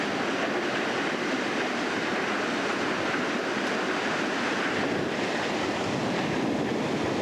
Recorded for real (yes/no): no